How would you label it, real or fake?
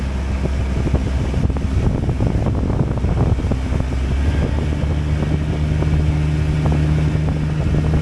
real